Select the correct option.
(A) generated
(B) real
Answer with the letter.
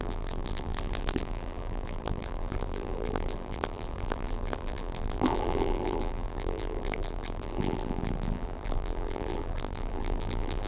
A